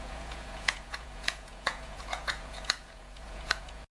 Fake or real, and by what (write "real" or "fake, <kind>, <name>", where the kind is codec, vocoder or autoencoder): fake, vocoder, Vocos